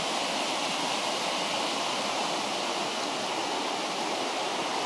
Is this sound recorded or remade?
recorded